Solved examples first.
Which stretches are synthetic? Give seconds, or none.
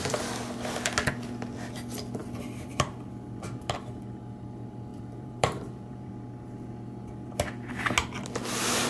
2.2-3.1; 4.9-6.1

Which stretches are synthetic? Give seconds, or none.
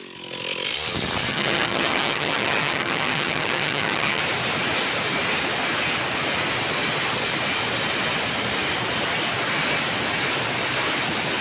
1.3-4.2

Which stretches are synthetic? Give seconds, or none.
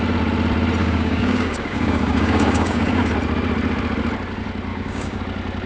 0.8-3.1; 4.7-5.2